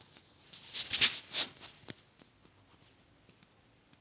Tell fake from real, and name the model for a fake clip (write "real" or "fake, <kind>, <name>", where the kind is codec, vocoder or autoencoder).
real